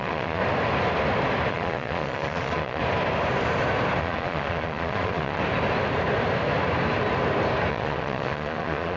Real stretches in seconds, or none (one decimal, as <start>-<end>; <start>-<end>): 0.4-1.5; 2.8-4.0; 5.4-7.7